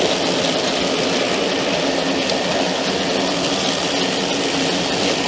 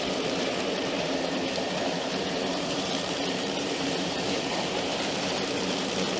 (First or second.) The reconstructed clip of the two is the second